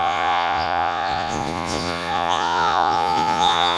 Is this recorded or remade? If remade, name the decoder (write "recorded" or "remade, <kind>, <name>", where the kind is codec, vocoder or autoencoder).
remade, vocoder, Vocos